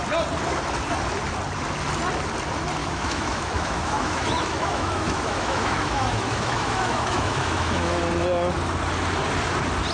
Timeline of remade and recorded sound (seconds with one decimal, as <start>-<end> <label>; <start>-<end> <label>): 0.0-2.8 recorded; 2.8-8.0 remade; 8.0-9.9 recorded